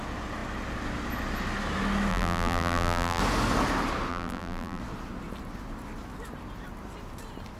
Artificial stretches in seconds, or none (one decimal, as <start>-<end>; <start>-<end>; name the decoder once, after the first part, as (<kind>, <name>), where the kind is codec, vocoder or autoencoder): 2.1-3.2 (vocoder, BigVGAN v2); 4.1-4.8